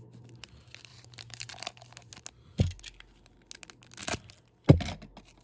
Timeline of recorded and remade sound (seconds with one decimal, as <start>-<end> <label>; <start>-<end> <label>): 0.0-0.9 recorded; 0.9-1.5 remade; 1.5-5.4 recorded